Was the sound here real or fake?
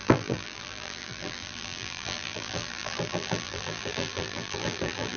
fake